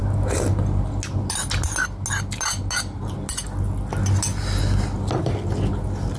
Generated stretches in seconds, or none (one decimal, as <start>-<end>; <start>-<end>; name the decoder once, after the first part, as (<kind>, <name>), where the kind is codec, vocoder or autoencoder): none